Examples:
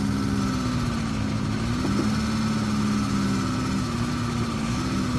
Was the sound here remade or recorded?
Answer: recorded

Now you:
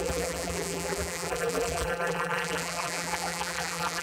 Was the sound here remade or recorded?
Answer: remade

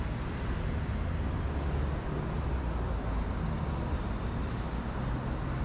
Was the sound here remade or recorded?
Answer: recorded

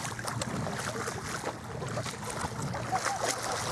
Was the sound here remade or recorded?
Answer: recorded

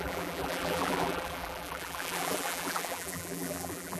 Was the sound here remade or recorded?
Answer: remade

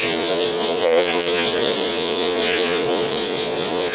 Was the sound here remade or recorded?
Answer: remade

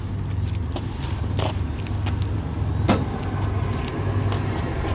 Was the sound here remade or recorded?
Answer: recorded